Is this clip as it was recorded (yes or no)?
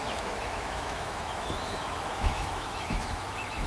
no